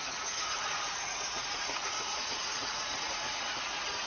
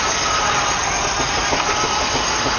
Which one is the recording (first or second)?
second